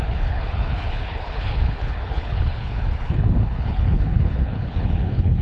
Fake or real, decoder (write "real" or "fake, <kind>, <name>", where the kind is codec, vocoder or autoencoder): fake, codec, HILCodec